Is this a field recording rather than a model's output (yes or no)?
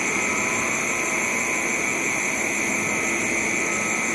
yes